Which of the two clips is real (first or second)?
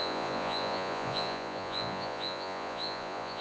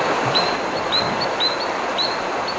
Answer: second